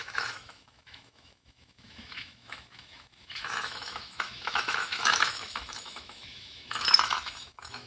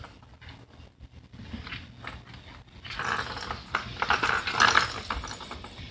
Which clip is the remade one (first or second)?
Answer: first